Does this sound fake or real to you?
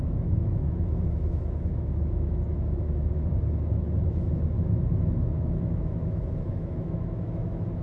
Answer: fake